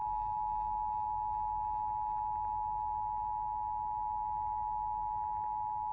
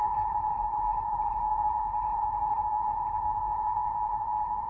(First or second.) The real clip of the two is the first